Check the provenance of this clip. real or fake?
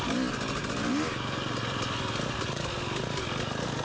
real